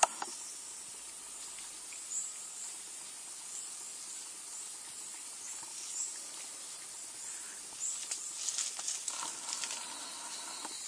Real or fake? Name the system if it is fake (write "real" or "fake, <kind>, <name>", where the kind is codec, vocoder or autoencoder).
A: real